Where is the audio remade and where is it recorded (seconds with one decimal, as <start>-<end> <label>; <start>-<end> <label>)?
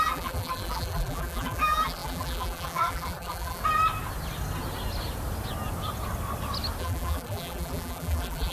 0.0-3.6 remade; 3.6-6.8 recorded; 6.8-8.5 remade